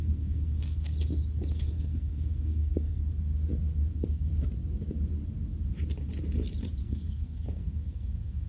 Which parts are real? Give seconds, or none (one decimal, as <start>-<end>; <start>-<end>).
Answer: 0.9-1.5; 3.0-3.9; 4.3-6.8